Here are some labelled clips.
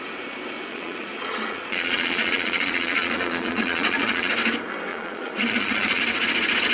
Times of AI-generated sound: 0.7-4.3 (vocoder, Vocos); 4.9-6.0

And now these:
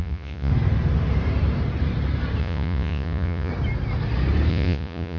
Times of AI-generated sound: 0.0-0.5 (vocoder, Vocos); 2.4-3.5; 4.5-5.2

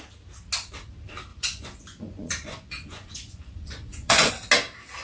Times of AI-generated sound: 1.3-4.3 (vocoder, Vocos)